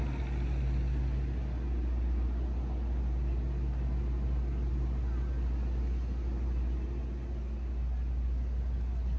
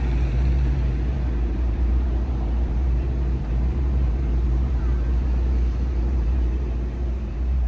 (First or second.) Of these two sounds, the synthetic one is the second